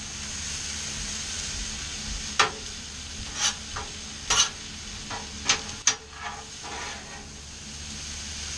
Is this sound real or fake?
real